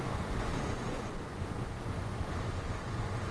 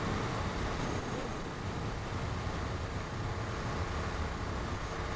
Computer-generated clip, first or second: first